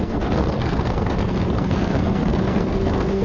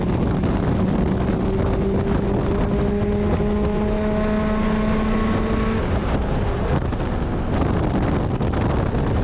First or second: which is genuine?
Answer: second